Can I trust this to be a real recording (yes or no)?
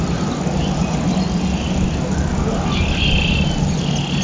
yes